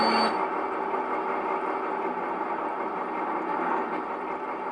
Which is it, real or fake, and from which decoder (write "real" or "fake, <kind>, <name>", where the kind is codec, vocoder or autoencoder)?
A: real